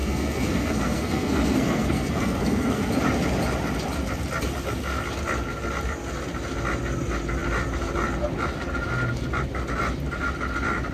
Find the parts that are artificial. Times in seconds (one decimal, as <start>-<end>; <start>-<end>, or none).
0.0-2.9